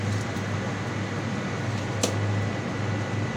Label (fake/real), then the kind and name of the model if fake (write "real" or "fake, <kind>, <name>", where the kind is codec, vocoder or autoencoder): real